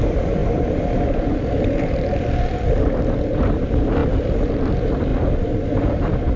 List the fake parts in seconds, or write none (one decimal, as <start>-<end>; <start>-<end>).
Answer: 0.0-0.4; 1.8-4.0; 4.5-5.1; 5.7-6.4